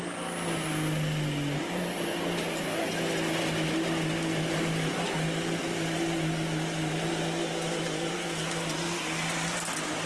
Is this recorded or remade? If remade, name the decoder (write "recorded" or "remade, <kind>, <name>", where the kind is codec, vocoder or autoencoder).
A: recorded